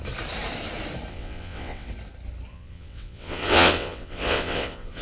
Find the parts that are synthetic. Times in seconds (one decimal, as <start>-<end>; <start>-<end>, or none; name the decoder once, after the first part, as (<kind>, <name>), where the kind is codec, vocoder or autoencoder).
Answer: 1.1-1.9 (vocoder, WaveNeXt); 2.5-5.0